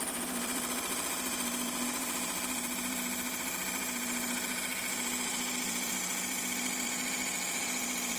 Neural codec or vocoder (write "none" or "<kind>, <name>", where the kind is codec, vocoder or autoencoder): vocoder, BigVGAN v2